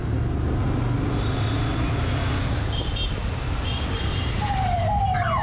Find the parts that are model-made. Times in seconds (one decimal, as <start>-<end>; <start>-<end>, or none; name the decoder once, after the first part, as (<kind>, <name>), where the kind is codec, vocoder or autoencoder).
1.7-2.2 (vocoder, BigVGAN v2); 3.2-4.2